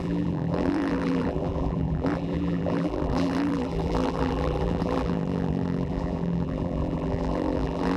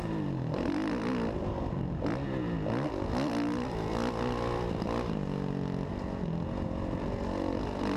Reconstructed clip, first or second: first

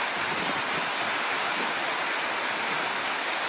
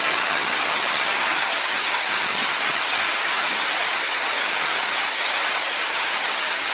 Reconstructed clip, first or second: second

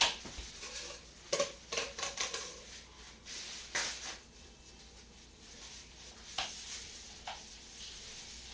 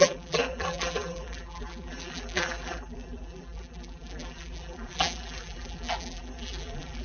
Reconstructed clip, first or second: second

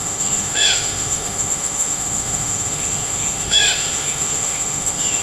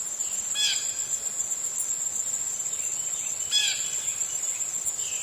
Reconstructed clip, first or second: first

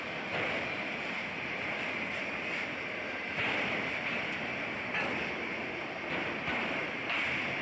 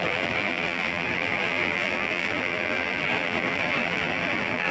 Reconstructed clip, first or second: second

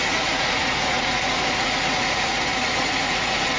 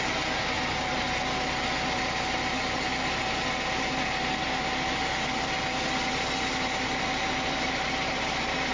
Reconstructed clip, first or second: first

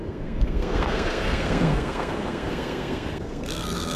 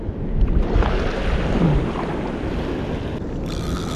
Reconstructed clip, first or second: first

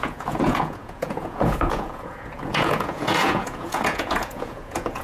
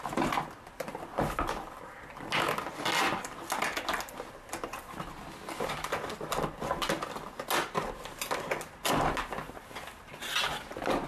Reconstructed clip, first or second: first